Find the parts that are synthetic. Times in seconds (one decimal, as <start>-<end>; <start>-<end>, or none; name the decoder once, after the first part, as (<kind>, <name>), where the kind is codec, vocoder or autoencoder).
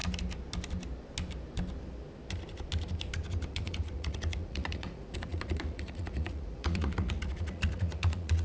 3.5-8.4 (vocoder, Vocos)